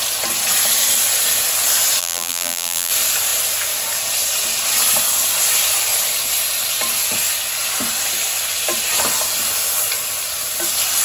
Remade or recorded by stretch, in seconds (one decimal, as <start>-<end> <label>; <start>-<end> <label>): 0.0-2.0 recorded; 2.0-2.9 remade; 2.9-11.0 recorded